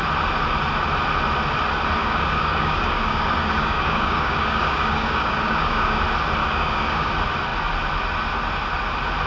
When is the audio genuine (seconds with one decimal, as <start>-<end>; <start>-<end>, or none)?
0.0-2.0; 6.0-6.4; 7.1-9.3